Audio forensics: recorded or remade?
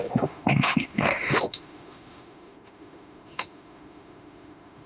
remade